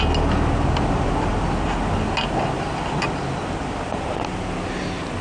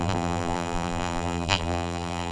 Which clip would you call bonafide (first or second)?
first